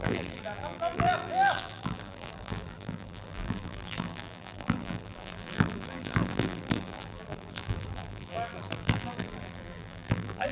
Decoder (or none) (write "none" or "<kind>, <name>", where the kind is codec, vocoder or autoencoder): vocoder, BigVGAN v2